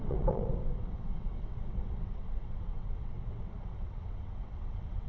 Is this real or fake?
fake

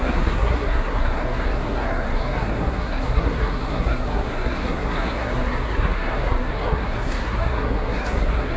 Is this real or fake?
fake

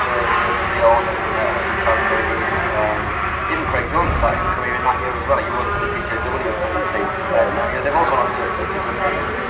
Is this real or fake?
real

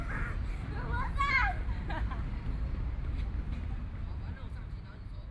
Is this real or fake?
fake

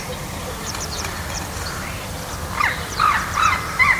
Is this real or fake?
fake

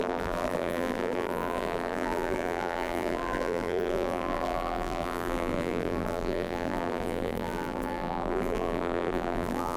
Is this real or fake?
fake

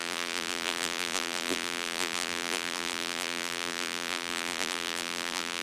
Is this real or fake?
fake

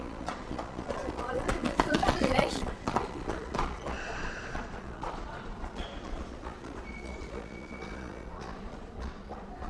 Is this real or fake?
fake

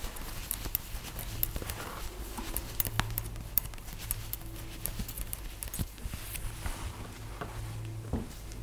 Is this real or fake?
real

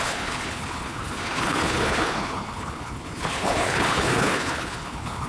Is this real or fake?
fake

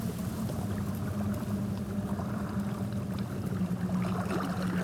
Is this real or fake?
real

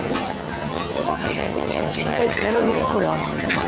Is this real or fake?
fake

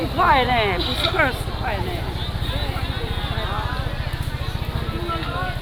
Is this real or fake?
real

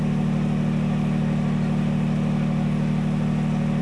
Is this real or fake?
real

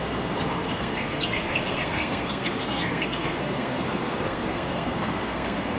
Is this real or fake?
fake